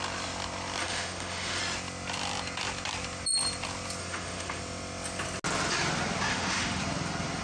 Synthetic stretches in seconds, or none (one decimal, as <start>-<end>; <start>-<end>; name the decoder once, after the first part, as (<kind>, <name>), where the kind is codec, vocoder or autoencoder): 0.8-1.6 (autoencoder, DAC-VAE); 4.0-4.6; 6.3-6.8